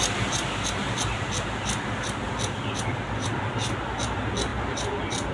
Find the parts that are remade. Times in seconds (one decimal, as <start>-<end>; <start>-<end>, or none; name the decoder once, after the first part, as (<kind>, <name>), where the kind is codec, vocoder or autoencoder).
none

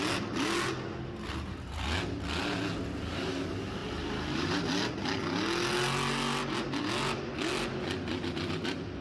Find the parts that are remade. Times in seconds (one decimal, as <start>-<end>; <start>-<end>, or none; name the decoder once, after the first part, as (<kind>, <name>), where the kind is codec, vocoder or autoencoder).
none

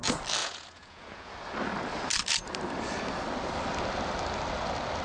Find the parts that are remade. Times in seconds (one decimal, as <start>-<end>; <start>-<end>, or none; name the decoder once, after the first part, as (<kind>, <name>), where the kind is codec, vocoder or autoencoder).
0.4-1.3 (vocoder, Vocos)

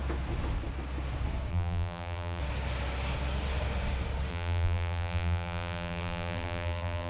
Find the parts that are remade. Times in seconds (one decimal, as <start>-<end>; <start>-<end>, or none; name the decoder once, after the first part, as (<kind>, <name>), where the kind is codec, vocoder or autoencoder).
1.5-2.4 (vocoder, BigVGAN v2); 4.3-7.1

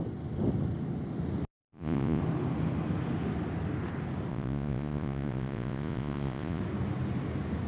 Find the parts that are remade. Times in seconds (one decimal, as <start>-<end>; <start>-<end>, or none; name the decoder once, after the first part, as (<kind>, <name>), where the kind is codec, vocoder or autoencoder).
1.6-2.2 (vocoder, Vocos); 4.3-6.6